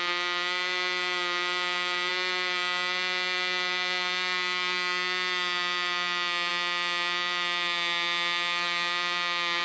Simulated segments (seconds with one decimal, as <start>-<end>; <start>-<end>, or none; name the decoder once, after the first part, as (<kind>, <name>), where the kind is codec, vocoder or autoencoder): none